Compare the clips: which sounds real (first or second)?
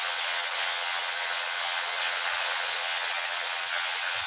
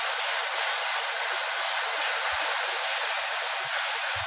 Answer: second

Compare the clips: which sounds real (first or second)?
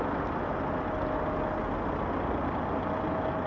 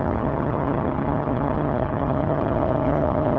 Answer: first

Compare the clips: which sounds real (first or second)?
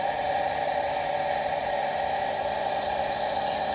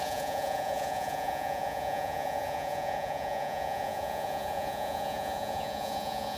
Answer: first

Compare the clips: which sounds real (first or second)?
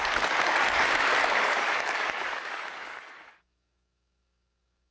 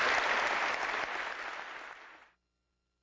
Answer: second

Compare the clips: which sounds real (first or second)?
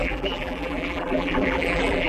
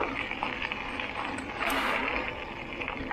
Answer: second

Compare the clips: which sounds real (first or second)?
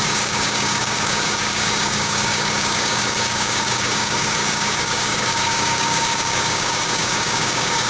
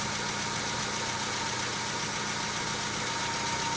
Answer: second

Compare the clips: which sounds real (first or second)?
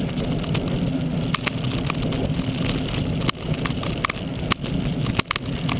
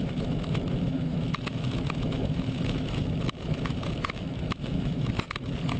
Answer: first